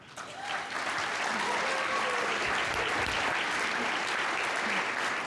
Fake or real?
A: real